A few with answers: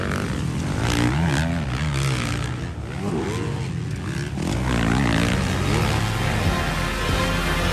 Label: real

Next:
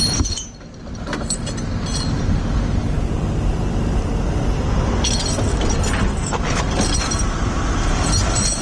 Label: real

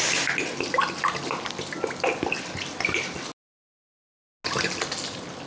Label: real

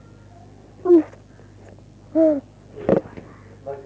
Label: real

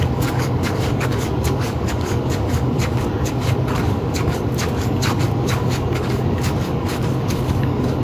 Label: fake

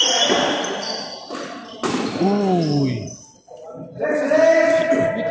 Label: real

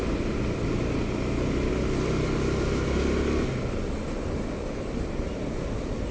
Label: real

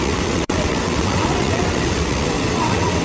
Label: fake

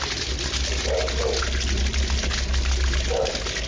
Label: real